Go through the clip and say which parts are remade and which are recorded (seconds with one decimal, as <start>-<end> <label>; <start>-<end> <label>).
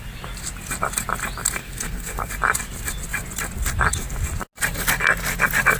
0.0-1.6 recorded; 1.6-2.3 remade; 2.3-5.8 recorded